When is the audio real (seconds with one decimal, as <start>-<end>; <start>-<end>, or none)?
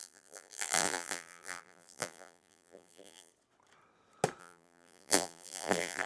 3.3-4.4